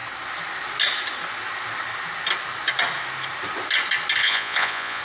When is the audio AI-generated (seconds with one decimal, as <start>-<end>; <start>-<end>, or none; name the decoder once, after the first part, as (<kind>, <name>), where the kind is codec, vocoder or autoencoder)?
4.2-5.0 (vocoder, Vocos)